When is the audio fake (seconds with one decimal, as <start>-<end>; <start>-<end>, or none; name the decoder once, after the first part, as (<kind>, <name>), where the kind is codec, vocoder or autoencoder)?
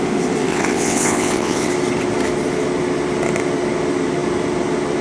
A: 0.5-1.7 (vocoder, WaveNeXt)